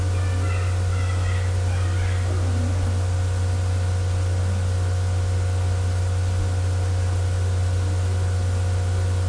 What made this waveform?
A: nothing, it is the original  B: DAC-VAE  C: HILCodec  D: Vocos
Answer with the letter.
A